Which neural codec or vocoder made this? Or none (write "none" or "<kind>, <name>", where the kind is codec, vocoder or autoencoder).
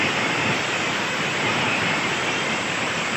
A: vocoder, BigVGAN v2